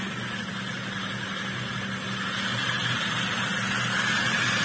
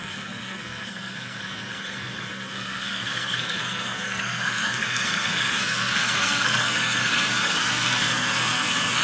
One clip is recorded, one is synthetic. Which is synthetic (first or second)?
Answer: second